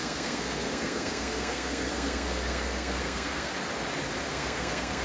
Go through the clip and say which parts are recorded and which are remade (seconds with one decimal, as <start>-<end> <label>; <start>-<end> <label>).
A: 0.0-3.5 remade; 3.5-4.3 recorded; 4.3-5.0 remade